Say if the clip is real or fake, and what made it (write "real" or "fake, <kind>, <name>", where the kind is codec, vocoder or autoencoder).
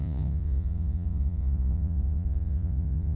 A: fake, vocoder, Vocos